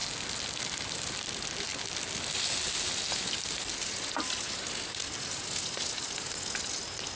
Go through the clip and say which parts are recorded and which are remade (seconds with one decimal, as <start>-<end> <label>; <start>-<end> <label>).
0.0-7.2 recorded